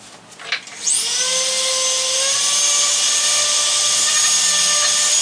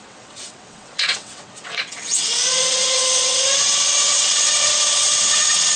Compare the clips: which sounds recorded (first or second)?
first